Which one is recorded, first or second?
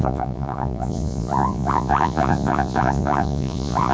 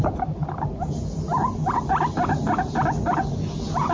second